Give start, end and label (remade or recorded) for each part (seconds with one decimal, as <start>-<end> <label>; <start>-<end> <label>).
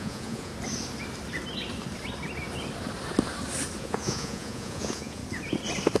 0.0-0.5 remade; 0.5-3.8 recorded; 3.8-5.2 remade; 5.2-6.0 recorded